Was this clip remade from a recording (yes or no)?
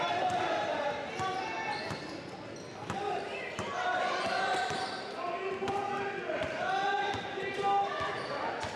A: no